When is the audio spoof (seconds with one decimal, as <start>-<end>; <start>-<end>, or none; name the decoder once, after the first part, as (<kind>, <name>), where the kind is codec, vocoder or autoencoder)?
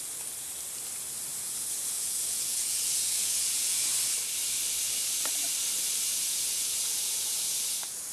1.3-3.9 (vocoder, Vocos); 6.1-8.1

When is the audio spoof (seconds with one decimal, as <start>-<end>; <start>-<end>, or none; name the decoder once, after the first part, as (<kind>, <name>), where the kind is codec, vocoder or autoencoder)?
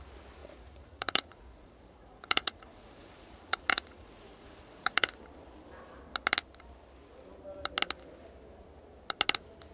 0.4-5.1 (vocoder, Vocos)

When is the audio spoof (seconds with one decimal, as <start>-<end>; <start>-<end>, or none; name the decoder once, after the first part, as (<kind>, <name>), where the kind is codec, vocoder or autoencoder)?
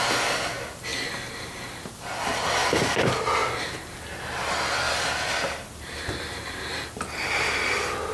none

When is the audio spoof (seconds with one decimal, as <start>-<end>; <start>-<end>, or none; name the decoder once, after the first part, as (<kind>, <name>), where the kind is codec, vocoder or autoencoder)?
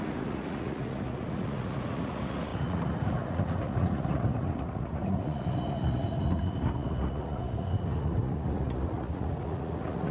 0.0-10.1 (vocoder, Vocos)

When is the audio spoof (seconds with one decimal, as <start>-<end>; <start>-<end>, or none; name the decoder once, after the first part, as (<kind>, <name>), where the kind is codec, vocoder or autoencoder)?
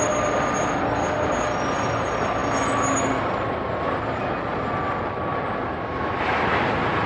none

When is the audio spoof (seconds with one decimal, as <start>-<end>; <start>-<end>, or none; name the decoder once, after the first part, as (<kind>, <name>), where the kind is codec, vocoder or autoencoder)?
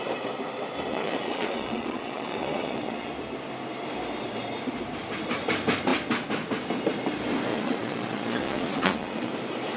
0.9-3.1 (vocoder, Vocos); 7.5-9.3